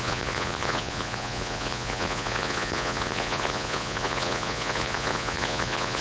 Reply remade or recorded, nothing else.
remade